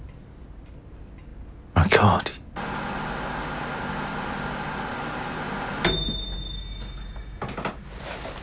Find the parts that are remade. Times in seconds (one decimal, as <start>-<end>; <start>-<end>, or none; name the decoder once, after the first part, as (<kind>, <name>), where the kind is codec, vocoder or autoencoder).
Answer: none